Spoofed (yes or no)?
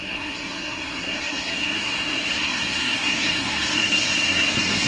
yes